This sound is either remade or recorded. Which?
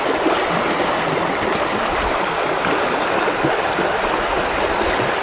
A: recorded